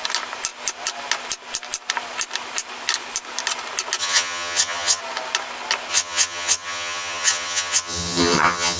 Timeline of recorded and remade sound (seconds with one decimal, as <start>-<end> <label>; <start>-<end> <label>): 0.0-4.0 recorded; 4.0-5.0 remade; 5.0-5.9 recorded; 5.9-8.8 remade